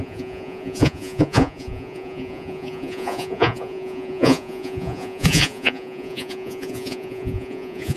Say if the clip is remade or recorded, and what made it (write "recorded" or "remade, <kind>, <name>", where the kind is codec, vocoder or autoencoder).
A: remade, vocoder, Vocos